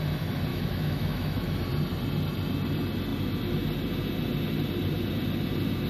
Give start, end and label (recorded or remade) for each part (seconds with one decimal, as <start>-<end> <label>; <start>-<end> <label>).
0.0-0.5 recorded; 0.5-1.6 remade; 1.6-5.9 recorded